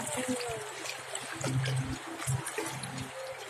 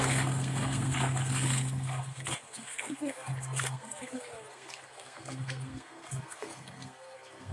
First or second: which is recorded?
first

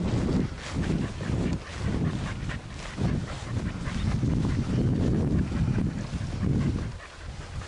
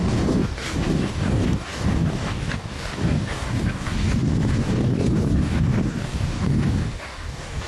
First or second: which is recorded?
first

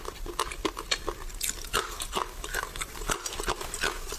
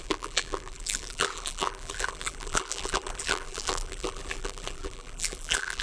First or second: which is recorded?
first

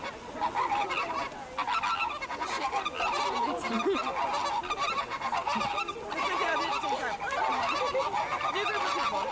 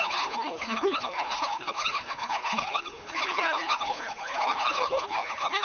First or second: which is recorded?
first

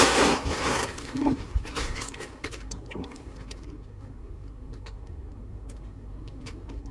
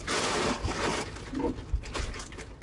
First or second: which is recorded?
second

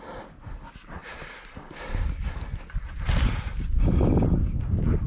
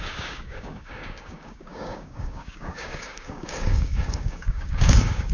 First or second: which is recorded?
first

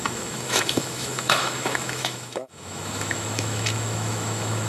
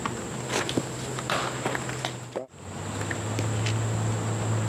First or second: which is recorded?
second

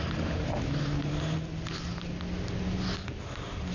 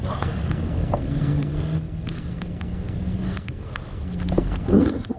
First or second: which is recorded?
first